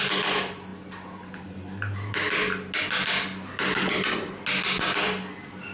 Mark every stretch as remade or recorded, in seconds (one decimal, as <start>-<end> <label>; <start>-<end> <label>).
0.0-5.7 recorded